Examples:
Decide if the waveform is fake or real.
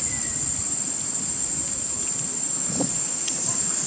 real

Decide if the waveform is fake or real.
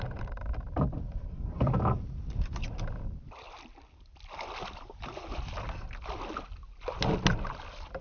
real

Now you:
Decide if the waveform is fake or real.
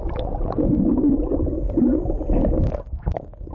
real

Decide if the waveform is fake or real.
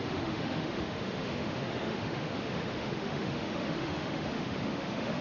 fake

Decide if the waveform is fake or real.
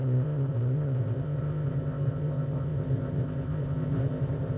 fake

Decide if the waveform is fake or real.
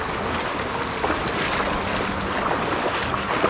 real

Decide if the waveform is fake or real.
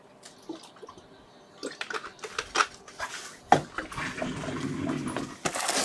real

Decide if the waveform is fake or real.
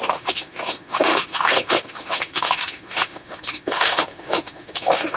fake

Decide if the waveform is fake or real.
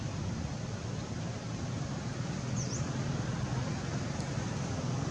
real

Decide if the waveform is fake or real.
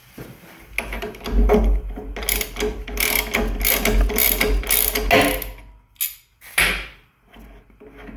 real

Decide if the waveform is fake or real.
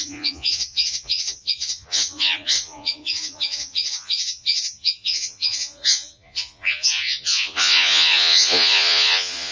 fake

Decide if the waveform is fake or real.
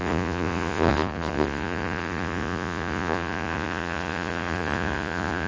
fake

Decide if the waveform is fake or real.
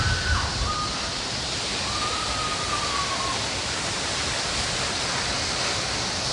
real